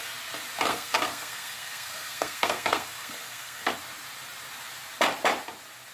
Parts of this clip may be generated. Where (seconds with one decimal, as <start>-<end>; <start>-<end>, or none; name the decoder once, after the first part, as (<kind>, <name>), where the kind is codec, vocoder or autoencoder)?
0.7-3.7 (codec, SNAC)